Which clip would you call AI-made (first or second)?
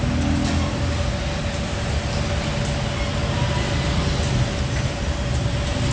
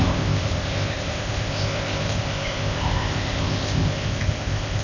second